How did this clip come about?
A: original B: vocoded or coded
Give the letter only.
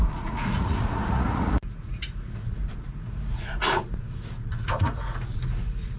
B